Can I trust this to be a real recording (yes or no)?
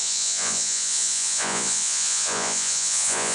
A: no